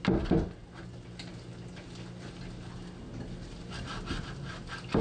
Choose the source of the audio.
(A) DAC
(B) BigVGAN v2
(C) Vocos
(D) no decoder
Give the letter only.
D